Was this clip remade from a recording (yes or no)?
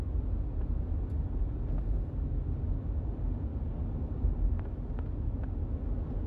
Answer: no